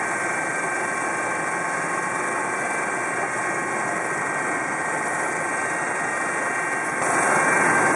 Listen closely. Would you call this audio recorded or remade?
recorded